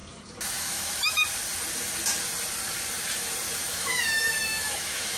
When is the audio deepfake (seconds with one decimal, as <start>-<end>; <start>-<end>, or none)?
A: 0.6-1.2; 3.7-5.2

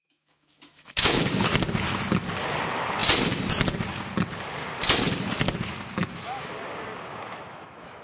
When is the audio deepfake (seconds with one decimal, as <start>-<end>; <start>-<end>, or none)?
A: 0.0-1.2; 6.0-6.5; 7.1-8.0

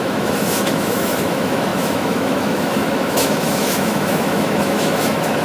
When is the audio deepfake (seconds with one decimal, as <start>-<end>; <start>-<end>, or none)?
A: 0.0-5.4

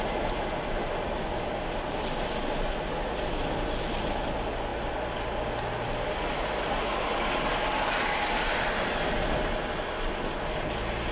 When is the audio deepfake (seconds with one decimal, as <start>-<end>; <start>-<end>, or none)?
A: none